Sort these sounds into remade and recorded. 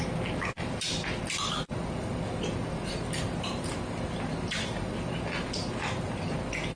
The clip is recorded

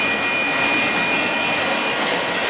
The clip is recorded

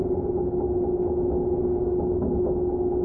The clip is recorded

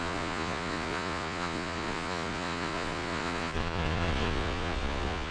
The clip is remade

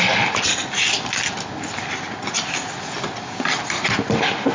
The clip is recorded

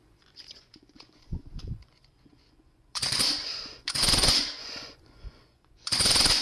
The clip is remade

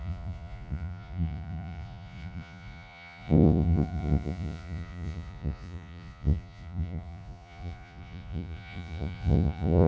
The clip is remade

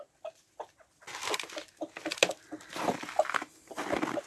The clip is recorded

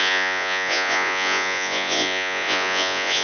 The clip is remade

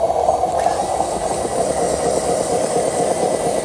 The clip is recorded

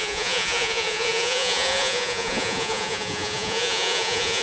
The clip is remade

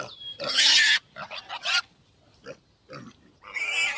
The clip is recorded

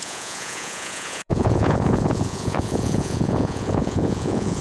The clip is remade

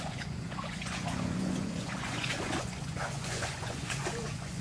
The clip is remade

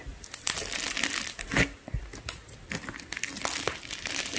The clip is recorded